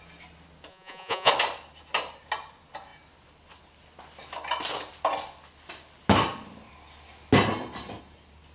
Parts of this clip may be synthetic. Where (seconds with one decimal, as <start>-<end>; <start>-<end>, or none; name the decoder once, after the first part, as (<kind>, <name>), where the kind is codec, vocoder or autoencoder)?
0.7-1.3 (vocoder, Vocos)

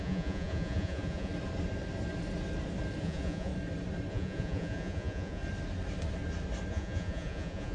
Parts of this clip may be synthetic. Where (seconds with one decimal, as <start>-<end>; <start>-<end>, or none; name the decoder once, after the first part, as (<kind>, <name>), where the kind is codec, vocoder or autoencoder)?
0.0-1.3 (vocoder, Vocos); 3.0-3.5; 4.1-5.4; 6.7-7.7

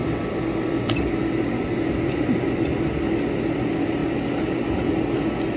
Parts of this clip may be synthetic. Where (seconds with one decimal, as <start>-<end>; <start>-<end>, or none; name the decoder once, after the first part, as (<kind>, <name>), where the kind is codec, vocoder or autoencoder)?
none

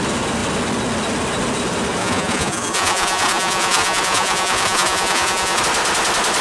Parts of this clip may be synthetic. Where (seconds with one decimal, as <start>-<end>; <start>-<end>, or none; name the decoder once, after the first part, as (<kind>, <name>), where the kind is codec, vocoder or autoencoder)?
2.0-5.6 (vocoder, Vocos)

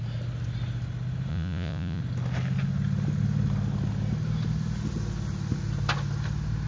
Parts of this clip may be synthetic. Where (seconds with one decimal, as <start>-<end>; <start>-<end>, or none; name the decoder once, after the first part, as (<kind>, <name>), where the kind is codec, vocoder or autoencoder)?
1.3-2.0 (vocoder, Vocos)